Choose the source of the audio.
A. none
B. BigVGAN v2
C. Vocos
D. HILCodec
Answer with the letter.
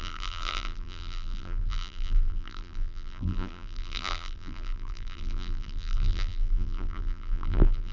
B